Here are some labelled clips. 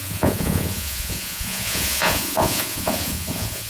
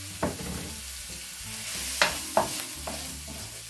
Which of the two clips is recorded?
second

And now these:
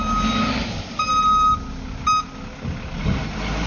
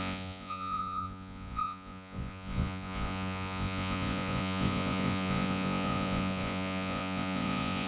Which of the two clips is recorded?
first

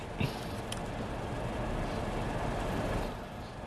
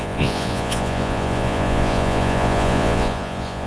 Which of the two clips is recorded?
first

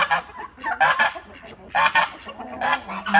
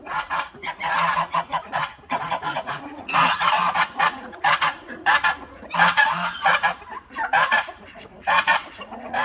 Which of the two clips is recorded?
first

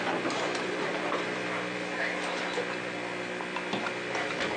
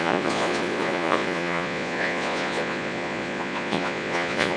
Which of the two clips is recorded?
first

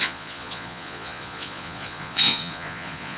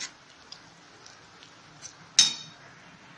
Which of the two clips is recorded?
second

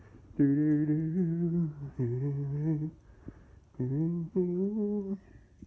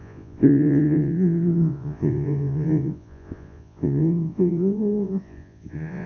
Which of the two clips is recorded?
first